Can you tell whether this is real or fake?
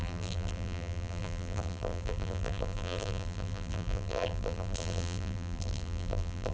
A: fake